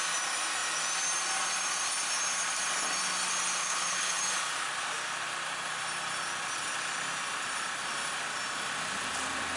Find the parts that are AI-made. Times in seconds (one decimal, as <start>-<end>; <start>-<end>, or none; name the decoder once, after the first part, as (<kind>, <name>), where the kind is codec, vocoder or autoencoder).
3.6-4.2 (codec, HILCodec)